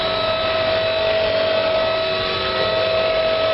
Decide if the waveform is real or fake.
real